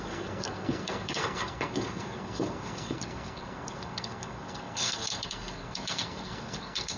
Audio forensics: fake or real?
fake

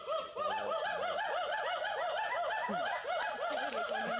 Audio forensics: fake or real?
real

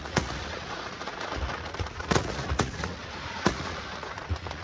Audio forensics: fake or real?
fake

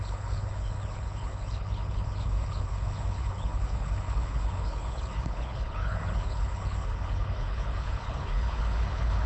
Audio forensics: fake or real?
fake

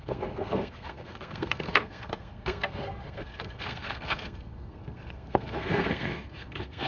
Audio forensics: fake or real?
fake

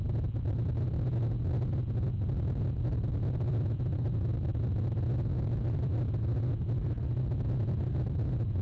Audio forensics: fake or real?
real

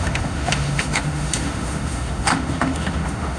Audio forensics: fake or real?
fake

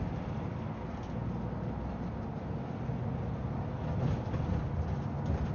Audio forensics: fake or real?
real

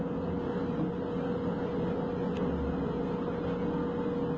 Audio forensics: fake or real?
real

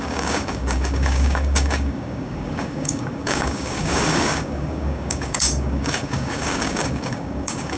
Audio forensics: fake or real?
fake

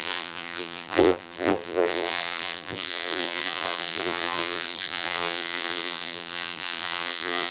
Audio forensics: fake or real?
fake